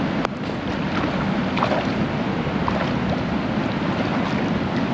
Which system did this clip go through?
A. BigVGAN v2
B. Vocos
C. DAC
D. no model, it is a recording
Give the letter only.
D